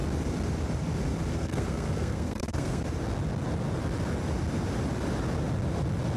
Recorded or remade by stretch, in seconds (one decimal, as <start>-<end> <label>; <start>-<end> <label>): 0.0-1.3 recorded; 1.3-2.8 remade; 2.8-6.2 recorded